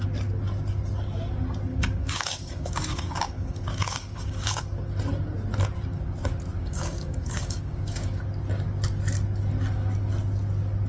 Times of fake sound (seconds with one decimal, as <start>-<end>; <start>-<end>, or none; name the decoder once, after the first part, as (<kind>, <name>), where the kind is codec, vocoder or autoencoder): 1.7-4.6 (codec, DAC); 6.6-8.2